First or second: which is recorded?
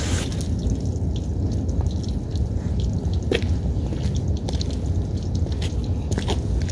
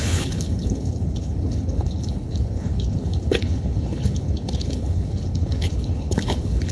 first